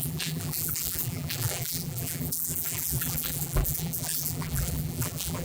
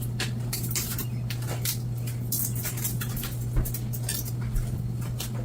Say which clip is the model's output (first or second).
first